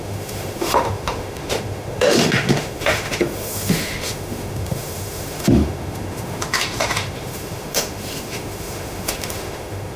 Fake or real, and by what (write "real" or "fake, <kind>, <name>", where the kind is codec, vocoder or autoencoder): fake, autoencoder, DAC-VAE